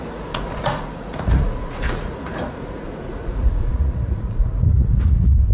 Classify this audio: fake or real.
fake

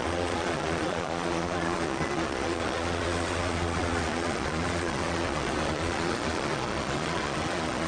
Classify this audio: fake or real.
fake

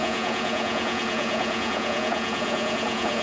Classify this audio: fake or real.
fake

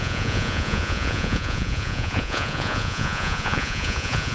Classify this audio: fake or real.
fake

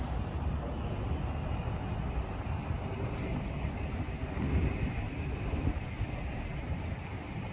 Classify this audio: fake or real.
real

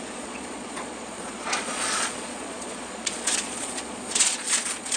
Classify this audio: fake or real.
fake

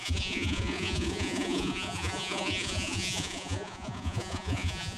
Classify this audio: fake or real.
fake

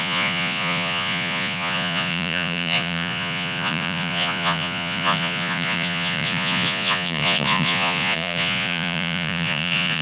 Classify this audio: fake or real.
fake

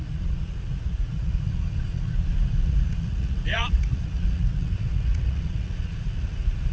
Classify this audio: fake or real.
fake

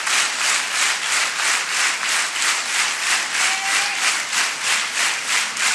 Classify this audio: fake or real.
real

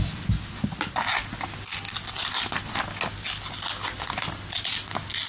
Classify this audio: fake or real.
real